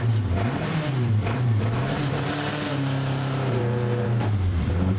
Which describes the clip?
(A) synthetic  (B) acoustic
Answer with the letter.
A